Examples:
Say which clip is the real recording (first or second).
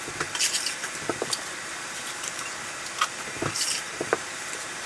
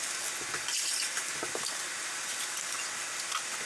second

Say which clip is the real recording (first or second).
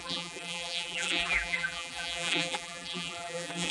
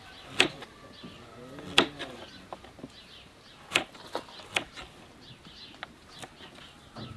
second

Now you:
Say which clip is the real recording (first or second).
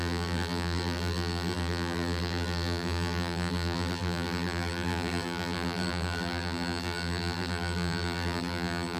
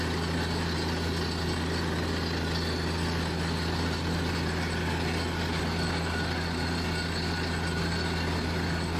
second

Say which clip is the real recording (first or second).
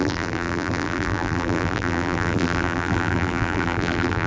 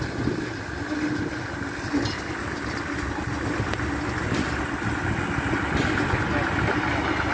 second